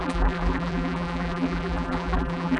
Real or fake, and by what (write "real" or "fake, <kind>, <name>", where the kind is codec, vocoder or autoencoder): fake, vocoder, BigVGAN v2